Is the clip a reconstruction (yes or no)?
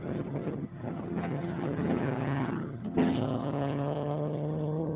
yes